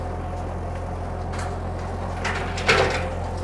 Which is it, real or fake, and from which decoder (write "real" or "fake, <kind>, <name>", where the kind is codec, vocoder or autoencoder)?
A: real